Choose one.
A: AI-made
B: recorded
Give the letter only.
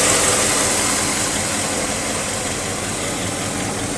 B